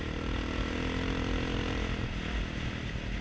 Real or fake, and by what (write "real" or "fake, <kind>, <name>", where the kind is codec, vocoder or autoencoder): real